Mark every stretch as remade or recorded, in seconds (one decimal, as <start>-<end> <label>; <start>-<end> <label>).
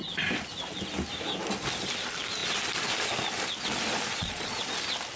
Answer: 0.0-4.1 recorded; 4.1-4.6 remade; 4.6-5.2 recorded